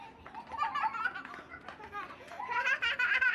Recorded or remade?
recorded